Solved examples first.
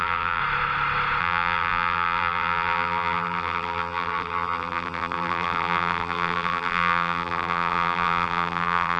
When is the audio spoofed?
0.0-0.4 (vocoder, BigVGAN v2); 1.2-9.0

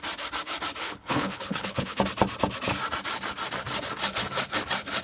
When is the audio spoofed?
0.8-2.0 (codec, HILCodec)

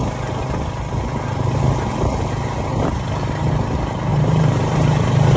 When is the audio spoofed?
4.1-5.4 (vocoder, BigVGAN v2)